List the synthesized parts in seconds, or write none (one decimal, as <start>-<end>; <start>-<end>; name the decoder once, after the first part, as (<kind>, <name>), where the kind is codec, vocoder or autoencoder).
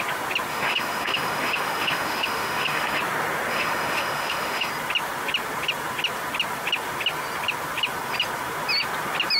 0.5-3.0 (autoencoder, DAC-VAE); 3.5-4.7